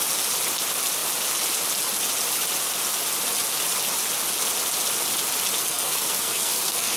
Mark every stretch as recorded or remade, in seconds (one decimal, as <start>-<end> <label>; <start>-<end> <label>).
0.0-5.6 recorded; 5.6-7.0 remade